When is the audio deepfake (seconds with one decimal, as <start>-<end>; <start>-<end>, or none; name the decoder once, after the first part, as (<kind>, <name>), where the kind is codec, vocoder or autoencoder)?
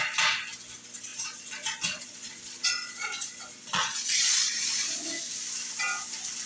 1.1-5.0 (vocoder, Vocos)